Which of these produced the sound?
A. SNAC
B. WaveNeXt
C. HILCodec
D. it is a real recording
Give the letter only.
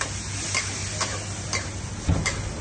D